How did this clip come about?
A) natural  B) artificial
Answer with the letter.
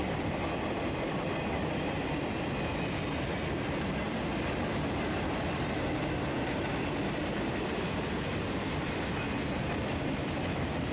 A